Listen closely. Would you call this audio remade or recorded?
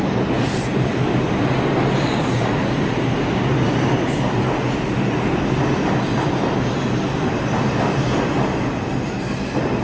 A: recorded